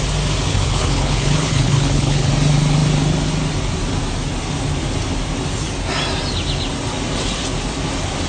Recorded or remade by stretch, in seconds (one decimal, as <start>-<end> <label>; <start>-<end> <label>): 0.0-0.5 recorded; 0.5-2.3 remade; 2.3-8.3 recorded